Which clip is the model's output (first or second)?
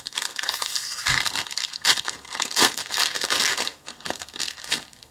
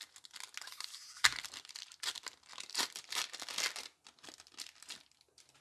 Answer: first